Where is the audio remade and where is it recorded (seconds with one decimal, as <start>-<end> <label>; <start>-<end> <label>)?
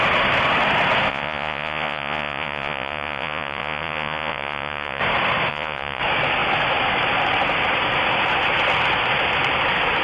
0.0-1.1 recorded; 1.1-5.0 remade; 5.0-5.5 recorded; 5.5-6.0 remade; 6.0-10.0 recorded